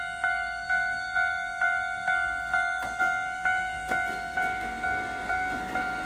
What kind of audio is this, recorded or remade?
remade